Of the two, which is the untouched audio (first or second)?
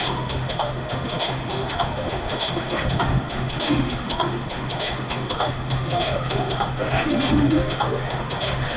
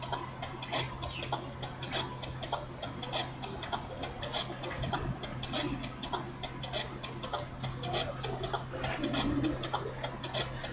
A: second